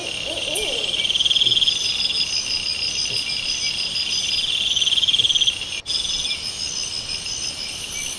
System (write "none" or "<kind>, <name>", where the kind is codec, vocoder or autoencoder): none